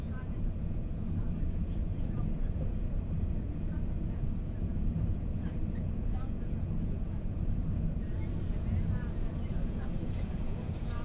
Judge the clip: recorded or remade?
remade